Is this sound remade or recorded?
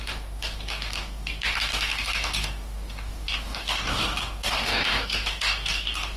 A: remade